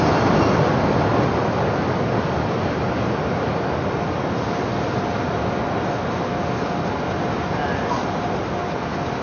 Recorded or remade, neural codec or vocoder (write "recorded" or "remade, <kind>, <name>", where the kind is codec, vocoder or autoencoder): recorded